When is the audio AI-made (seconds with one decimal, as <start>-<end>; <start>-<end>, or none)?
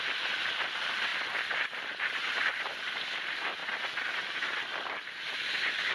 none